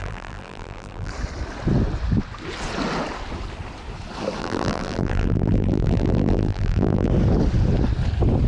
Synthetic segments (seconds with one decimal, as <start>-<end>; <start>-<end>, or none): 0.0-1.1; 4.4-7.1